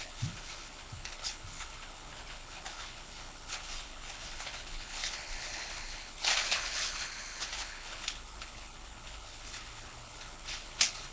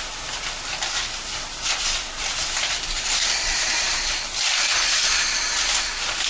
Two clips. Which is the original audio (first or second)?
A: second